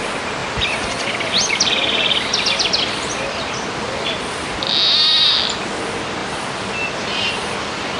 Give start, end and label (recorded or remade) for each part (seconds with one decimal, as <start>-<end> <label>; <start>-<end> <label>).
0.0-0.4 recorded; 0.4-4.7 remade; 4.7-6.2 recorded; 6.2-8.0 remade